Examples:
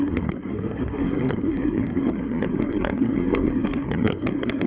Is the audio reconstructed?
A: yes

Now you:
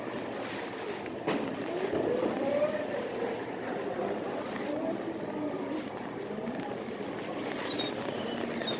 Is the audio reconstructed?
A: no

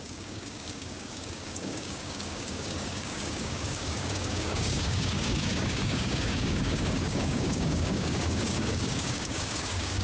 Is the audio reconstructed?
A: yes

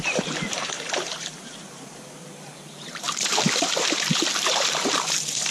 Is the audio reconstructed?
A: yes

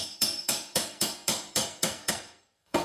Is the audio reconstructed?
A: yes